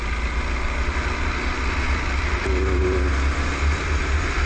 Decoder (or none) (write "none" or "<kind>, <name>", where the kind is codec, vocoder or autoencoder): none